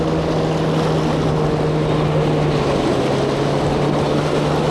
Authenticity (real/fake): real